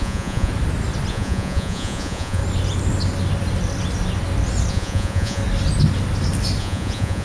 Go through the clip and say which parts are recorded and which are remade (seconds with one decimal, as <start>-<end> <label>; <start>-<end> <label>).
0.0-0.5 remade; 0.5-1.1 recorded; 1.1-2.4 remade; 2.4-4.7 recorded; 4.7-5.4 remade; 5.4-6.6 recorded; 6.6-7.2 remade